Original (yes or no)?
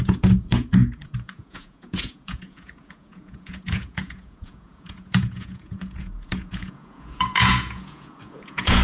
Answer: no